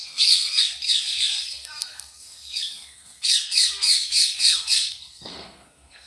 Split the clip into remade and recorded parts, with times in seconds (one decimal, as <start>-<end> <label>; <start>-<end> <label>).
0.0-6.1 remade